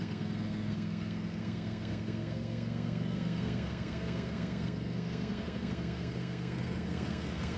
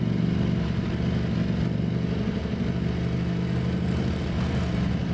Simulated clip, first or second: first